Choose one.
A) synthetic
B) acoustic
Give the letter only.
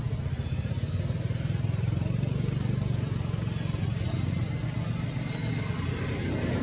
B